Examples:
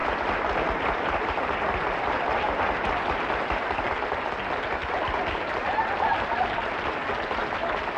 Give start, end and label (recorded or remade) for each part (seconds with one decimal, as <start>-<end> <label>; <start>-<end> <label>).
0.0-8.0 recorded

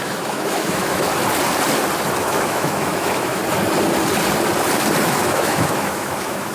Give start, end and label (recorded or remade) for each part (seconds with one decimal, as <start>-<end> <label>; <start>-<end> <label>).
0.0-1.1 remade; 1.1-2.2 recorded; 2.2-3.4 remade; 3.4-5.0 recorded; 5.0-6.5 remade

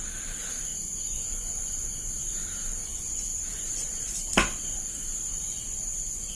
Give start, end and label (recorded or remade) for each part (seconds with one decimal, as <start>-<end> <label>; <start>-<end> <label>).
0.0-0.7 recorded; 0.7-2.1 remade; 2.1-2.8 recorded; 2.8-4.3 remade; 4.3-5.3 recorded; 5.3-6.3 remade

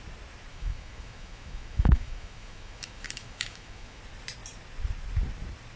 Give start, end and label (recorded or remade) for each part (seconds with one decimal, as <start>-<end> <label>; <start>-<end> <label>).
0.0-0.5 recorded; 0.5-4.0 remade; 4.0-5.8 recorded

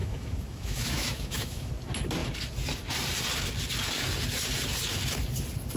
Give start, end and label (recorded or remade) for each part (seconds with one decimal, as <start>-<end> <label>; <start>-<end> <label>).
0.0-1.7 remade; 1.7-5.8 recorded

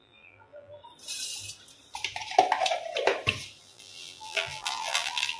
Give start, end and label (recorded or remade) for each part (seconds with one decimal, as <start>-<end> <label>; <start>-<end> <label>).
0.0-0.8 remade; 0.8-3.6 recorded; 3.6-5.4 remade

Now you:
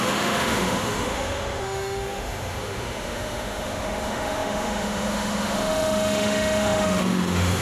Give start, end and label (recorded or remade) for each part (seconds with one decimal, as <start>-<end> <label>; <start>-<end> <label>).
0.0-7.6 remade